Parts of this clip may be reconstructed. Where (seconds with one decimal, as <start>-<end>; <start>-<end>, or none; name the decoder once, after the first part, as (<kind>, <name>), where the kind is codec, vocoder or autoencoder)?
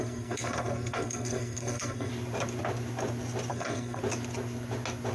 0.0-2.1 (codec, SNAC); 3.5-4.0